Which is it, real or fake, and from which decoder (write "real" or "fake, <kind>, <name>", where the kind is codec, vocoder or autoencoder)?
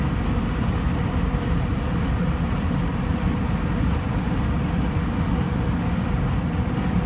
real